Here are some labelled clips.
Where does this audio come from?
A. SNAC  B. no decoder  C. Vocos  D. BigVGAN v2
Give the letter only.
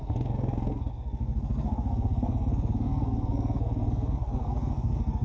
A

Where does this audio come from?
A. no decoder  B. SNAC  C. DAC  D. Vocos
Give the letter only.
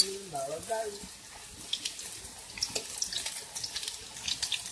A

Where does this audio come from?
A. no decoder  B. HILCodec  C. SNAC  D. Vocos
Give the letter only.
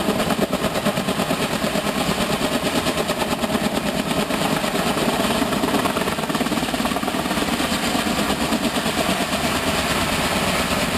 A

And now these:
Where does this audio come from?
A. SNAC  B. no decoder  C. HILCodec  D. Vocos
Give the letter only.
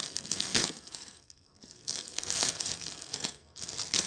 A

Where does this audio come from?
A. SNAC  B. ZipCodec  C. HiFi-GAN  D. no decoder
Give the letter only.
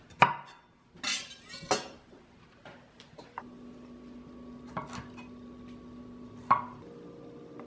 D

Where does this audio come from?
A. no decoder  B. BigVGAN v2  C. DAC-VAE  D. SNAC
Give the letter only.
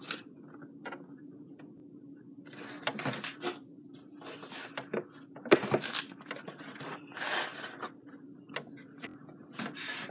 A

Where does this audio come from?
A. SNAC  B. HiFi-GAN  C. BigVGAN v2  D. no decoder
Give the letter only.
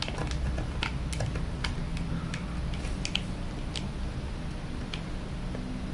D